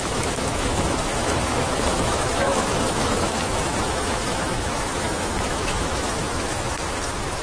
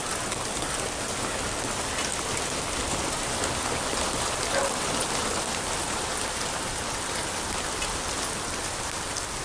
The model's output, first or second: first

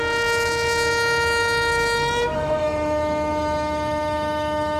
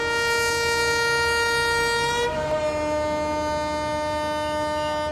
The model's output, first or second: first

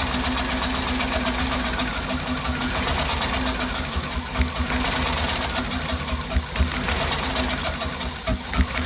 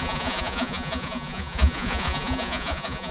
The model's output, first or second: second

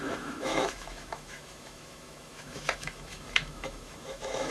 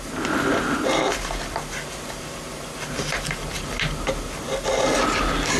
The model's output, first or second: first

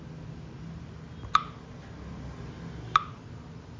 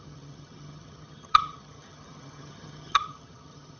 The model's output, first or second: second